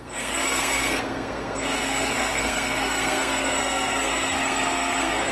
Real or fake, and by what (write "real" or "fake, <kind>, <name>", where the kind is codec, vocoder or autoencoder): fake, codec, SNAC